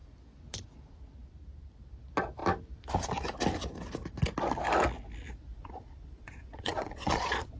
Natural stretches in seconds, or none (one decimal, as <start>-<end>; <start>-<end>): 0.0-5.5